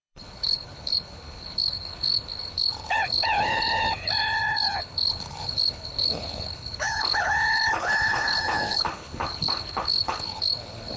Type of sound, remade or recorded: remade